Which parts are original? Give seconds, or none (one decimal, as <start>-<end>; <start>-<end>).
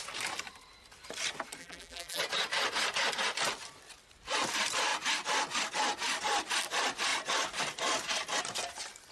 0.0-1.6; 2.2-9.1